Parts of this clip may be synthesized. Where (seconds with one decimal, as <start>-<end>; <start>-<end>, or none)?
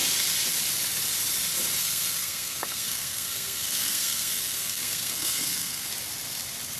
1.8-5.9